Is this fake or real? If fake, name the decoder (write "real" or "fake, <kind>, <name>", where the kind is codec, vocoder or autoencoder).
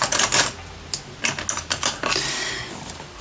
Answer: real